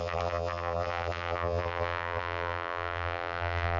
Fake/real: fake